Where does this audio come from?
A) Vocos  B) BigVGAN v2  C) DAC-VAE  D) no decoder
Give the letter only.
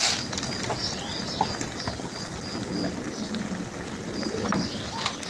D